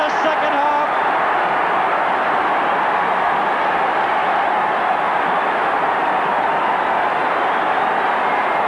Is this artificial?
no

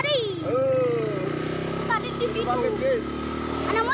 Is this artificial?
no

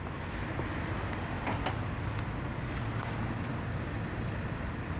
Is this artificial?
no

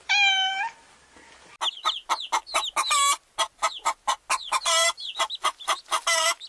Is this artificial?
no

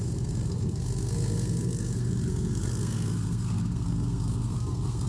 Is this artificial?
yes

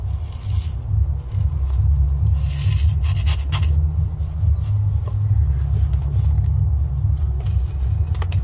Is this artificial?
no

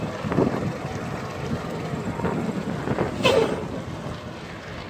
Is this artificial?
no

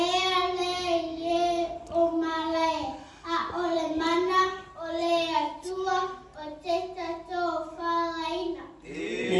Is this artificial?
no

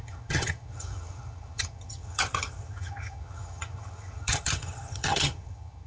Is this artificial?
yes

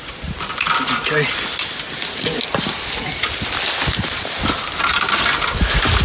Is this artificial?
no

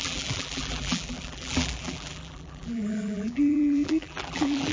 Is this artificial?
yes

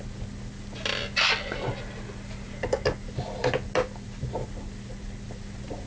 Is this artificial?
no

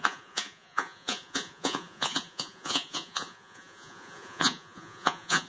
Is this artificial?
yes